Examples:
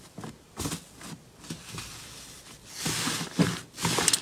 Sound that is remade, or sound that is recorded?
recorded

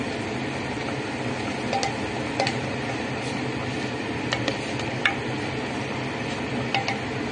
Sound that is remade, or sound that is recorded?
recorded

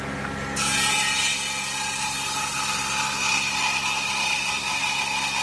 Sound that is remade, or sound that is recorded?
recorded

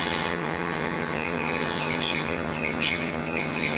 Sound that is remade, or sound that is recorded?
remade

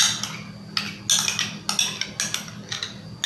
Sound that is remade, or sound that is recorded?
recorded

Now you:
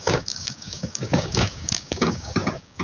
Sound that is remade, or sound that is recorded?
remade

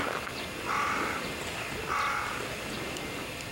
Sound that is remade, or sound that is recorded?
recorded